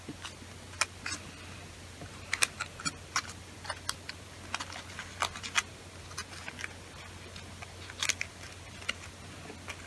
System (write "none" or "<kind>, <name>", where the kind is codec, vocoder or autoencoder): none